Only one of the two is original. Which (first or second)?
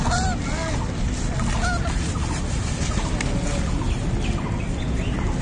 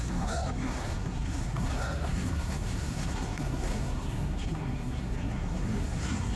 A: first